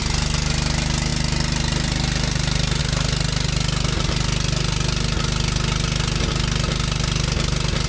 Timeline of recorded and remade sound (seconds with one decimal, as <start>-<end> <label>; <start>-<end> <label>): 0.0-7.9 recorded